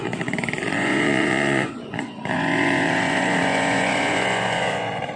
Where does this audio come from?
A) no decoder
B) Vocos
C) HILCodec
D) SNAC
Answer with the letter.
B